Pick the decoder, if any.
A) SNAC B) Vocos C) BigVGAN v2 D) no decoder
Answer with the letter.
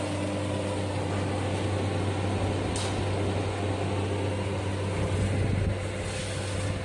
D